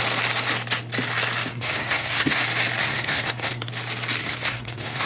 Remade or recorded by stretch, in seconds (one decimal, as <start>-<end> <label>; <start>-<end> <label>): 0.0-1.5 recorded; 1.5-2.4 remade; 2.4-2.8 recorded; 2.8-3.7 remade; 3.7-4.2 recorded; 4.2-5.1 remade